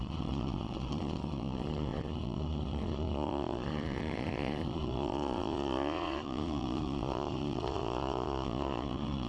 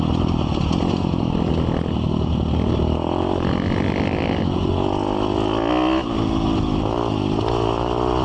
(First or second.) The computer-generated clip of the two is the first